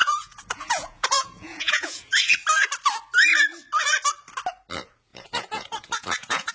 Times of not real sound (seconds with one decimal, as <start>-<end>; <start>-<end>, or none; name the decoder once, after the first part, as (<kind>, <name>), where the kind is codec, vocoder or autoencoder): 0.0-2.2 (vocoder, Vocos); 5.1-6.5